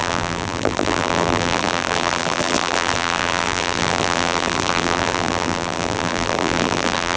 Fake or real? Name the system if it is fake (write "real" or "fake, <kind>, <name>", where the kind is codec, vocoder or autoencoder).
fake, vocoder, BigVGAN v2